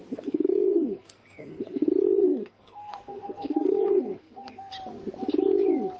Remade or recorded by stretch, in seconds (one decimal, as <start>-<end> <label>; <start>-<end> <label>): 0.0-1.9 remade; 1.9-2.3 recorded; 2.3-4.7 remade; 4.7-6.0 recorded